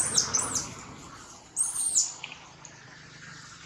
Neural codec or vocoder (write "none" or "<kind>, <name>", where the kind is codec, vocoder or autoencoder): none